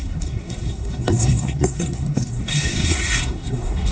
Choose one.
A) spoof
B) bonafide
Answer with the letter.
A